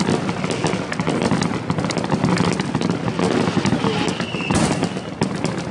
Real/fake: real